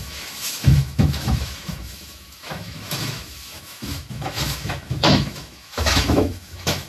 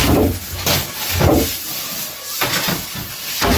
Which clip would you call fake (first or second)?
first